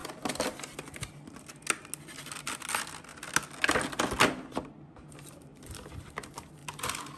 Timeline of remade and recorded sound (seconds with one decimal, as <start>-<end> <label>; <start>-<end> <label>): 0.0-7.2 recorded